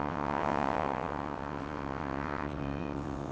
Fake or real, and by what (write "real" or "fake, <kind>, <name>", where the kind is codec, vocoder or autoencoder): fake, vocoder, WaveNeXt